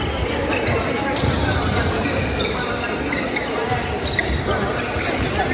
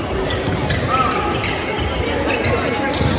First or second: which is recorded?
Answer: second